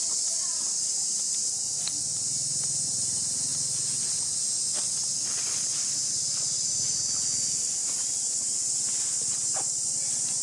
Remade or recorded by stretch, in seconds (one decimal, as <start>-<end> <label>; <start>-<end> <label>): 0.0-10.4 recorded